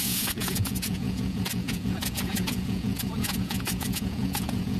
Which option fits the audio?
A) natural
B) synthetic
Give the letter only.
B